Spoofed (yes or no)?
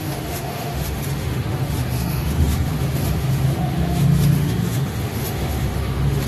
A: yes